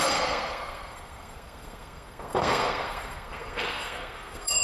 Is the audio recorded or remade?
remade